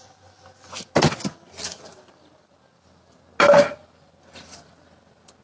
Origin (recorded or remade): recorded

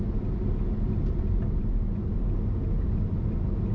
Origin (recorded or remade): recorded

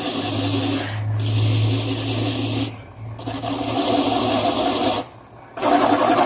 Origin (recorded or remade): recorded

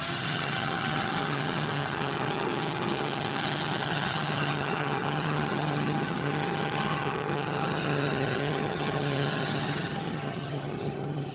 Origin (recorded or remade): remade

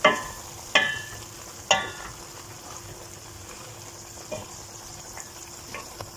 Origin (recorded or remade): recorded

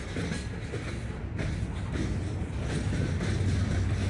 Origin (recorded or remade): recorded